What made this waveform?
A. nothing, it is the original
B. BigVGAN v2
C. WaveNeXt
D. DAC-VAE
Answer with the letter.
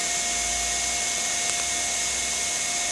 A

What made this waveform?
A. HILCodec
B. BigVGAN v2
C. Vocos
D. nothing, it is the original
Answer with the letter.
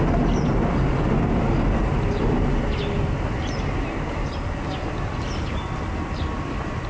D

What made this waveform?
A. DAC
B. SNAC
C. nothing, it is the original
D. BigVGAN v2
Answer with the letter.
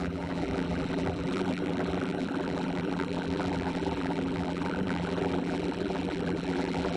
D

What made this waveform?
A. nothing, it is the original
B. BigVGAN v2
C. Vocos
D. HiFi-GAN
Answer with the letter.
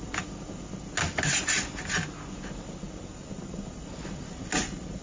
A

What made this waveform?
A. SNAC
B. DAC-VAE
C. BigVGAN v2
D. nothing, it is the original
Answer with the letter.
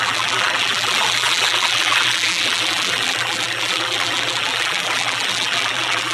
C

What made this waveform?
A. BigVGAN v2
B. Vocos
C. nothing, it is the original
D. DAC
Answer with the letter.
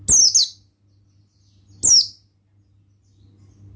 C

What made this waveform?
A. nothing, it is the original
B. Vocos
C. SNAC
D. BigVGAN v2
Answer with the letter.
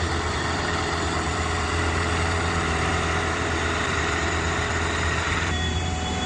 D